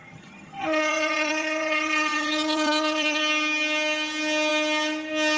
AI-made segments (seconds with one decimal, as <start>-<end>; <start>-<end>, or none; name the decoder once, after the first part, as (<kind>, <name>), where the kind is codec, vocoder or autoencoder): 0.0-3.2 (vocoder, HiFi-GAN)